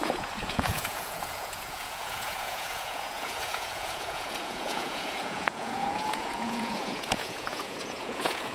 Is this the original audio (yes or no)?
no